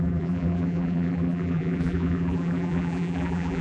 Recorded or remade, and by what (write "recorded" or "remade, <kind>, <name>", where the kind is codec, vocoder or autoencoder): remade, vocoder, BigVGAN v2